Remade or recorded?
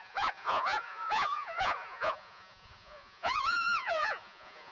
remade